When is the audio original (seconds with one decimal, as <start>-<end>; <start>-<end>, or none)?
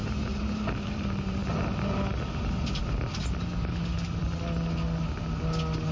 1.4-5.9